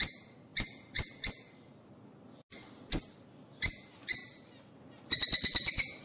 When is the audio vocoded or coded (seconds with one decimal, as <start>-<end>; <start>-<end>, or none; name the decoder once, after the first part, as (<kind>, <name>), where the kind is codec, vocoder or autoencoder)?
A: none